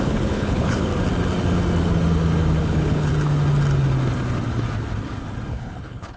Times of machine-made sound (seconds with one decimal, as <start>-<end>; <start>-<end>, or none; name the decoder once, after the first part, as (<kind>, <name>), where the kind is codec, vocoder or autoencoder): 0.0-0.9 (codec, HILCodec); 2.6-3.1; 5.5-6.2